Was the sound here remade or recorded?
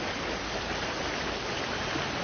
recorded